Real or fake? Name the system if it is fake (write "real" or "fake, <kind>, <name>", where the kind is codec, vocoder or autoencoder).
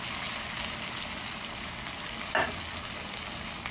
real